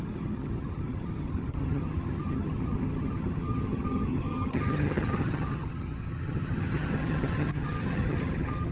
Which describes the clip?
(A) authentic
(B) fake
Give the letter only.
B